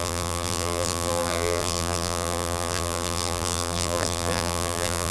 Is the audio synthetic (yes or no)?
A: yes